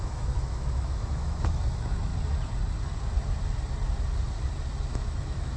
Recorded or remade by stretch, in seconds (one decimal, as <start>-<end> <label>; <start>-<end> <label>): 0.0-2.1 remade; 2.1-4.9 recorded; 4.9-5.6 remade